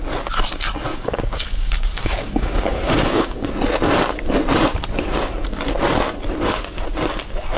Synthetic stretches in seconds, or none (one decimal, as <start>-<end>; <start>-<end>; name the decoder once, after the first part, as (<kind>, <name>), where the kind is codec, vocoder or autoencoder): 0.9-3.5 (codec, DAC)